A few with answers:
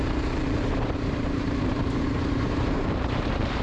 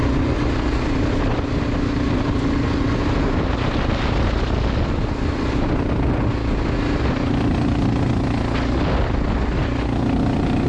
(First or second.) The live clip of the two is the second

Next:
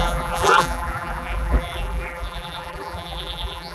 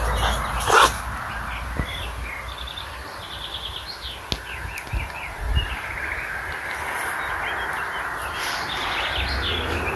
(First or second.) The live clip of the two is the second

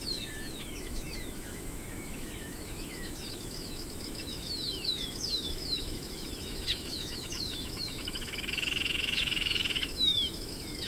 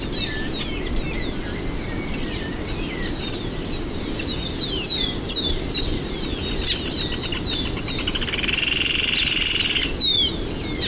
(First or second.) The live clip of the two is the second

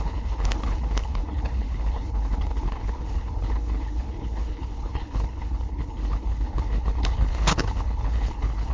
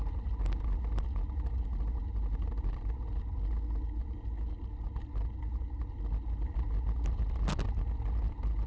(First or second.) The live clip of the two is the second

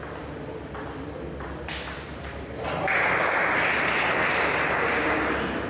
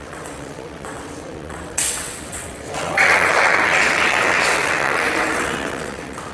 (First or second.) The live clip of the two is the first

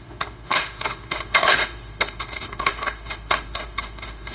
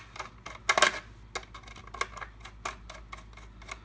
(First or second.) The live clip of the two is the second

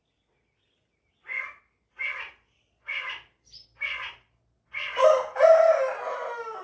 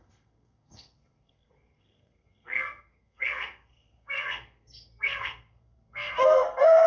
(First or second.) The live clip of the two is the first